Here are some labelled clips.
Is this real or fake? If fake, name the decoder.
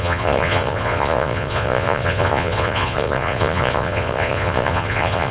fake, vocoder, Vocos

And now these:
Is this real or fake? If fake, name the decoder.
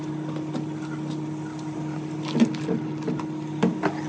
real